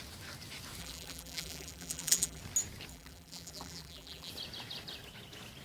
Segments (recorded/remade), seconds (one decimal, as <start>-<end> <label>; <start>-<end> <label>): 0.0-0.8 recorded; 0.8-2.4 remade; 2.4-2.9 recorded; 2.9-4.3 remade; 4.3-5.6 recorded